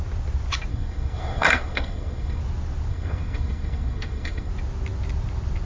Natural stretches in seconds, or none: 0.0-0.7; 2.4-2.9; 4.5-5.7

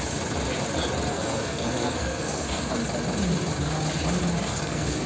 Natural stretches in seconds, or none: 0.0-1.1; 2.7-4.5